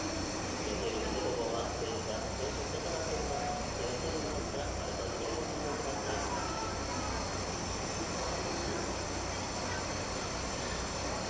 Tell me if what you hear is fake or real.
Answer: real